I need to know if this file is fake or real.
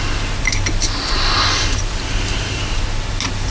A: real